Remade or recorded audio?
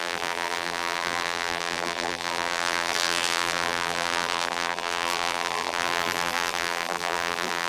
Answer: remade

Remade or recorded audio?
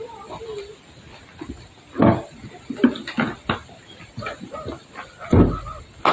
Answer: recorded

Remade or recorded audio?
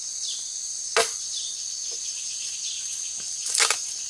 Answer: recorded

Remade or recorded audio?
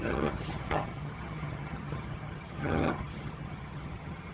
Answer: remade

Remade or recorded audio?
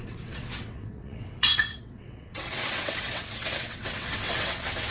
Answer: remade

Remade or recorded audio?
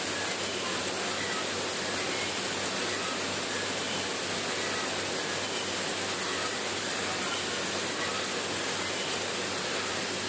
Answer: recorded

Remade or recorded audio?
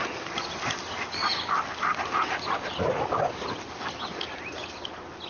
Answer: recorded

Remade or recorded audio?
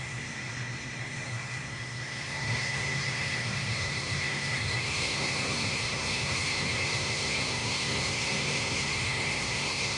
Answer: remade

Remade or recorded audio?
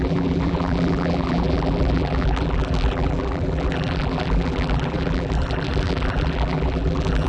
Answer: remade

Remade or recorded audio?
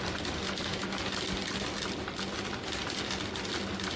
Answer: recorded